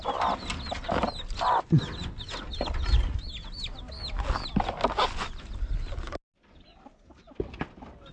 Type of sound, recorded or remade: recorded